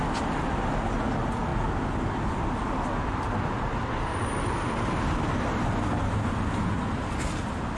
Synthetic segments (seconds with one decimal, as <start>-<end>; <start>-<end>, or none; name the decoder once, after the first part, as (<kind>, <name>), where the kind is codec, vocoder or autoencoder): none